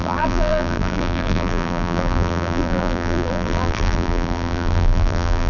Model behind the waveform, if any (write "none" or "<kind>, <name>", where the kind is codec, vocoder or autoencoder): vocoder, BigVGAN v2